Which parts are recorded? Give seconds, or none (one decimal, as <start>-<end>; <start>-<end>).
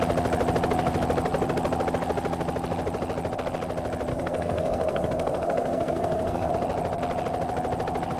0.0-4.1; 6.5-8.2